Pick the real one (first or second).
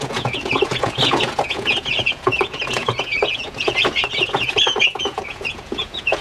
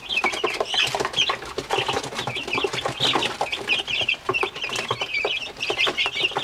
second